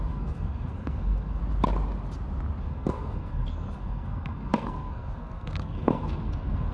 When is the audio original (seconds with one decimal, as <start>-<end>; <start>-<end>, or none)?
1.4-2.6